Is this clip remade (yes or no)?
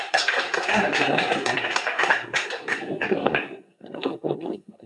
yes